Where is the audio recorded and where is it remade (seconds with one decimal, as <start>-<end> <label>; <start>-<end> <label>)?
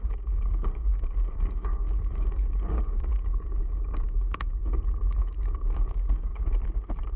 0.0-4.5 remade; 4.5-5.2 recorded; 5.2-6.3 remade; 6.3-7.2 recorded